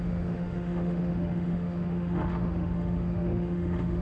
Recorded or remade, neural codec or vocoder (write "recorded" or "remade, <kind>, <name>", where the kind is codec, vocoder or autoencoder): remade, autoencoder, DAC-VAE